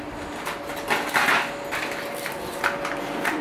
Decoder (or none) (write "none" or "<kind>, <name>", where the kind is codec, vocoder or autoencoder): none